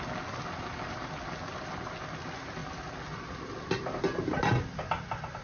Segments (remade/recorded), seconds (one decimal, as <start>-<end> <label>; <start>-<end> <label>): 0.0-5.4 recorded